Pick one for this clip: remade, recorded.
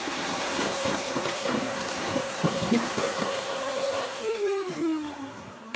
remade